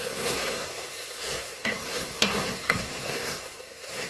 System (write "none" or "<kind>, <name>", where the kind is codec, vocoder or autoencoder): codec, SNAC